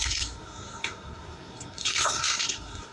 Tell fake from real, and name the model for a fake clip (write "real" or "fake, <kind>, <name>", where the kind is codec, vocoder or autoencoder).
fake, codec, SNAC